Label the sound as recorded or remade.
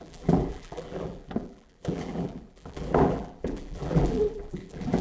remade